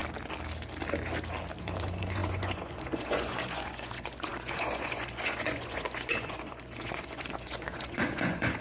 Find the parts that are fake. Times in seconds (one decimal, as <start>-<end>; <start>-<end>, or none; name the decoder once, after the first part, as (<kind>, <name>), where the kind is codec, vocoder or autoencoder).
1.6-8.6 (vocoder, Vocos)